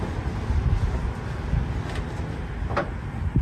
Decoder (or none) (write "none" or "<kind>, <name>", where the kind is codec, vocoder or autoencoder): none